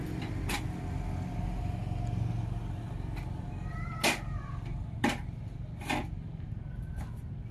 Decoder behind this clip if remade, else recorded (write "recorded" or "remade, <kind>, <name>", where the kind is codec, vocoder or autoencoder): recorded